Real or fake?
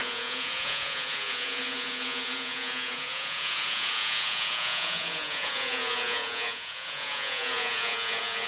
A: fake